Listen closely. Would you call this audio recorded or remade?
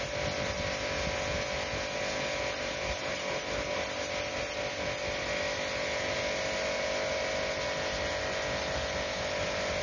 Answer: recorded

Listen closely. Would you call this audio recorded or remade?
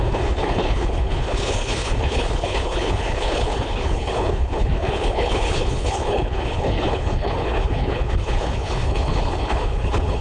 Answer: remade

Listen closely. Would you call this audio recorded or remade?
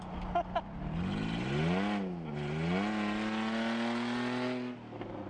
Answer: recorded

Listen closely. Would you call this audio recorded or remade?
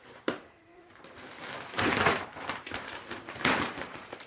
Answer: remade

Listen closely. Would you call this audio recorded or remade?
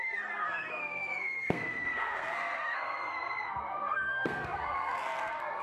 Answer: remade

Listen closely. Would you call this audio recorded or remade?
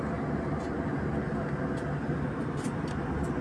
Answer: recorded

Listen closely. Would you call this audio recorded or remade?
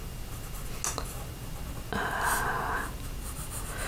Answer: recorded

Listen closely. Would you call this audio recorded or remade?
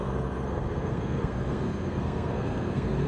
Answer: remade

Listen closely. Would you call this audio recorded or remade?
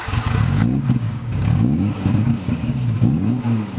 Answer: remade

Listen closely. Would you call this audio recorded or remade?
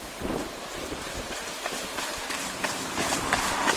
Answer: remade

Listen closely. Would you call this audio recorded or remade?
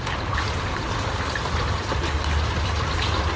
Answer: recorded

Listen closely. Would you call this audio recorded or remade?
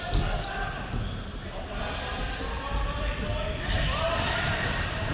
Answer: recorded